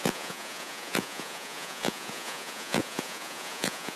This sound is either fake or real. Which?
fake